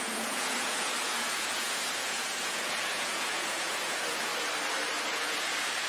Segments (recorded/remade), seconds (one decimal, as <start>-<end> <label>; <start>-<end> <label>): 0.0-4.3 remade; 4.3-5.0 recorded; 5.0-5.9 remade